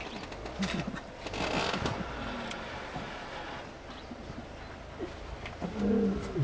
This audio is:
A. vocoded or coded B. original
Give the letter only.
B